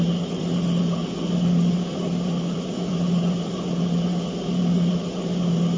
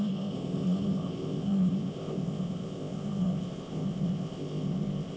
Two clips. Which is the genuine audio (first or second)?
first